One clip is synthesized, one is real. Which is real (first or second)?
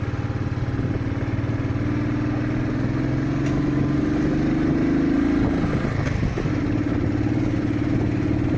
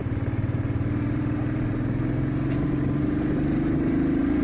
first